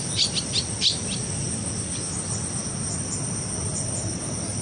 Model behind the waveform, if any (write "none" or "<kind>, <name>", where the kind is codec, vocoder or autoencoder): none